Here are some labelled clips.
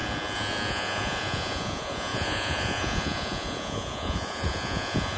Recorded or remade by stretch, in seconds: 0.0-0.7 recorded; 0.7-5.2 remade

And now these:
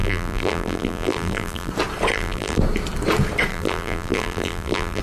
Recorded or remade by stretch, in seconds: 0.0-1.7 remade; 1.7-2.1 recorded; 2.1-2.6 remade; 2.6-3.5 recorded; 3.5-5.0 remade

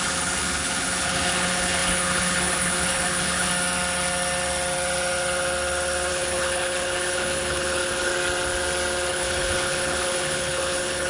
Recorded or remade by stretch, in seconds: 0.0-3.5 remade; 3.5-6.1 recorded; 6.1-8.1 remade; 8.1-9.1 recorded; 9.1-11.1 remade

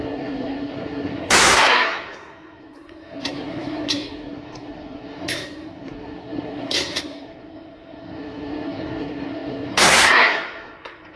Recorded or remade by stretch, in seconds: 0.0-11.2 remade

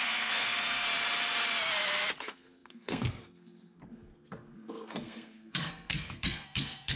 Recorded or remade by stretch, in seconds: 0.0-0.9 remade; 0.9-2.2 recorded; 2.2-7.0 remade

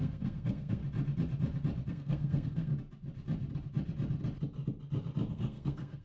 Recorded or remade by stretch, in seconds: 0.0-0.8 remade; 0.8-1.9 recorded; 1.9-2.7 remade; 2.7-5.3 recorded; 5.3-6.0 remade